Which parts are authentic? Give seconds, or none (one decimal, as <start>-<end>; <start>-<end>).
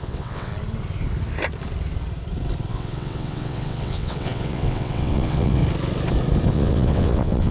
0.5-2.7; 5.6-6.5